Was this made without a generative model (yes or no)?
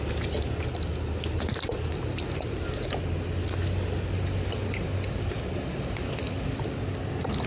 yes